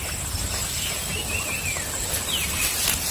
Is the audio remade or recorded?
recorded